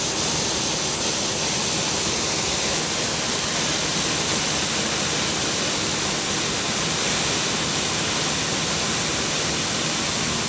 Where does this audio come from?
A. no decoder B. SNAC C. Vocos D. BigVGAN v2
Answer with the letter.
A